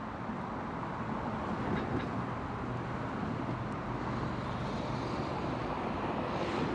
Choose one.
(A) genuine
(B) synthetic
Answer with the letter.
A